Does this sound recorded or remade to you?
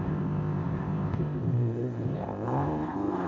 remade